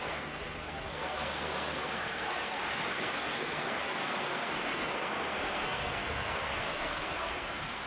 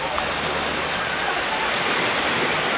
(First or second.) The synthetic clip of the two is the first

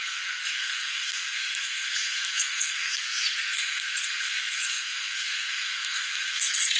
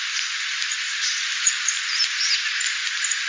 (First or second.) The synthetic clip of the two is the first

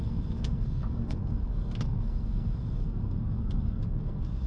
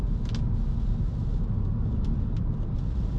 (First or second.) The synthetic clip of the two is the first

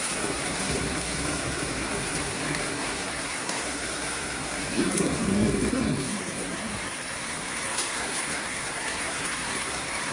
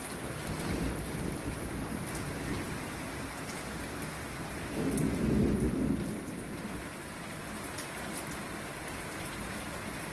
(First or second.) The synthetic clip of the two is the first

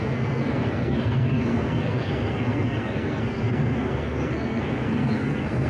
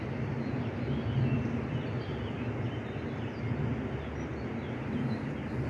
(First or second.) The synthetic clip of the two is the first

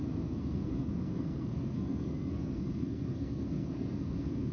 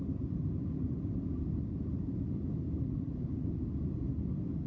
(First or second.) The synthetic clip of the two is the first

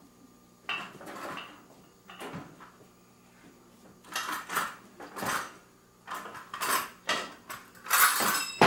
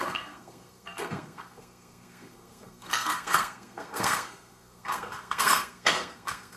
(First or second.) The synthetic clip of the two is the second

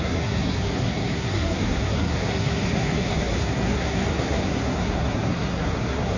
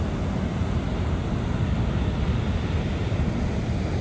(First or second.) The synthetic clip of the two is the first